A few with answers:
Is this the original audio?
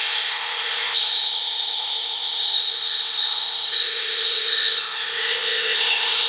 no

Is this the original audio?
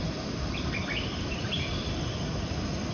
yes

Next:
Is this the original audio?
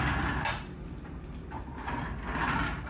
yes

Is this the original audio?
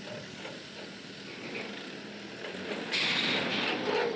yes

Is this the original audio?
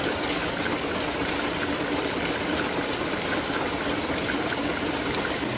yes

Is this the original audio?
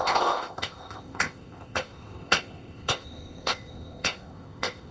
no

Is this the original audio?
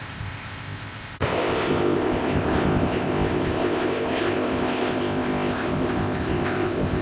no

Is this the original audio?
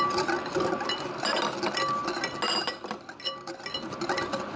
yes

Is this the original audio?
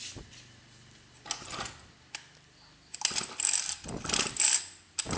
yes